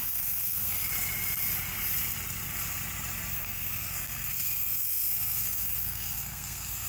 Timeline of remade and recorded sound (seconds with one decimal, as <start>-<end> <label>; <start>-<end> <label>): 0.0-0.9 remade; 0.9-3.3 recorded; 3.3-6.9 remade